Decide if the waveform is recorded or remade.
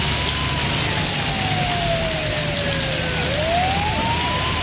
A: recorded